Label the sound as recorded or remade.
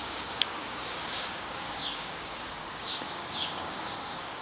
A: remade